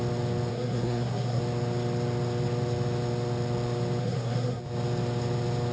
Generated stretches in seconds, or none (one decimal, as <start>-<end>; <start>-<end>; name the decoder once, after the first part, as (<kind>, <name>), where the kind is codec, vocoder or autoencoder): 0.5-1.4 (codec, SNAC); 4.0-4.6